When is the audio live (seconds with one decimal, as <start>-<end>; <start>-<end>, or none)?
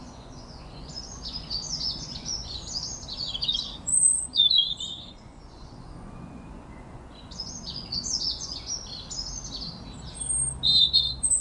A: 8.7-10.8